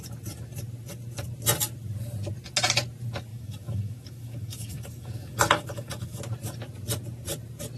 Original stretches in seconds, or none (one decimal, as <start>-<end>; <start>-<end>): 0.0-3.3; 6.2-7.8